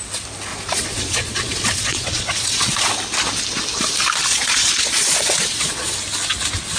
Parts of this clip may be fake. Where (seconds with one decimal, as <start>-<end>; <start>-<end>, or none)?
0.5-2.9; 4.3-5.9